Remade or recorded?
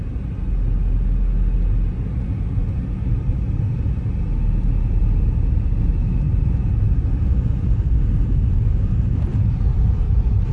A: recorded